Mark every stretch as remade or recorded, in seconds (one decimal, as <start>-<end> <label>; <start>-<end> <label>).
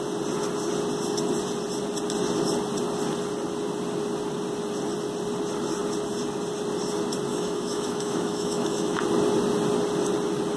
0.0-7.3 recorded; 7.3-9.0 remade; 9.0-10.6 recorded